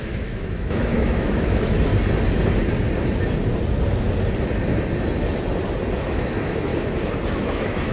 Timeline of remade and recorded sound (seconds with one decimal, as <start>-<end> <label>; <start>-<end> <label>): 0.0-1.9 remade; 1.9-6.0 recorded; 6.0-6.7 remade; 6.7-7.4 recorded; 7.4-7.9 remade